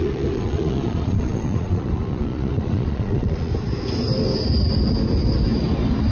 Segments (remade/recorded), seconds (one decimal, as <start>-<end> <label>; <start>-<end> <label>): 0.0-3.5 remade; 3.5-6.1 recorded